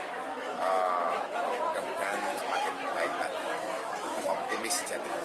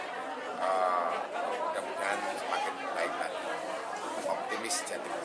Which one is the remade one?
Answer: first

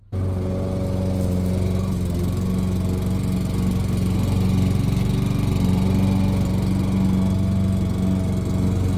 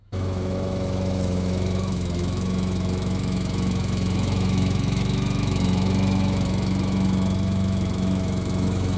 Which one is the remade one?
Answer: second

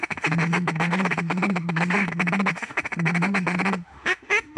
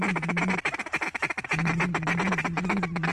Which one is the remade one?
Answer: first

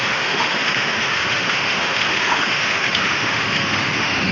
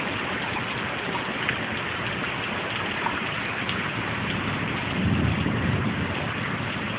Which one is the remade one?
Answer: first